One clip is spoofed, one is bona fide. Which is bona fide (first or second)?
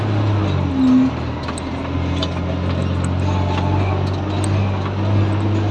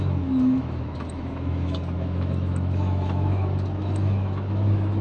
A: first